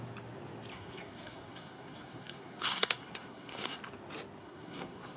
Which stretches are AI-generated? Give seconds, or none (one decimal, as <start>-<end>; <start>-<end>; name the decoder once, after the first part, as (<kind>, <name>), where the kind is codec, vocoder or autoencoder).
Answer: 0.7-3.8 (codec, SNAC); 4.4-5.2